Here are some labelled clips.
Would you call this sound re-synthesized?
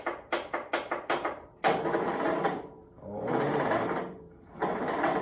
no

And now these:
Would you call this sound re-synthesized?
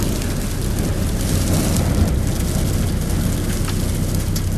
no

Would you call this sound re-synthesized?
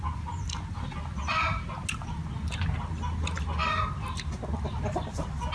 no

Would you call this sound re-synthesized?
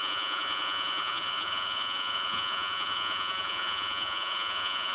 yes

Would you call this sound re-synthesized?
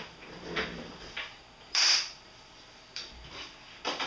no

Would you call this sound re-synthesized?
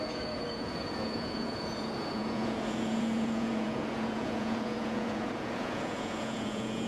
yes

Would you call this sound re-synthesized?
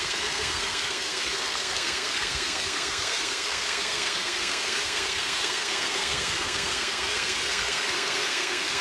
yes